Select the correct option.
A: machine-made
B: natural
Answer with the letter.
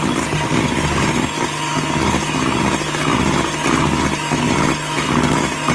B